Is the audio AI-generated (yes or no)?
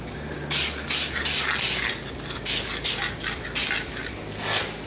no